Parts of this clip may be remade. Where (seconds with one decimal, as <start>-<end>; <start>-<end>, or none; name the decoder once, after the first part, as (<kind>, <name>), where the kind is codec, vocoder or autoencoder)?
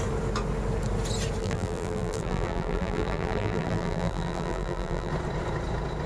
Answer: 1.4-5.1 (vocoder, BigVGAN v2)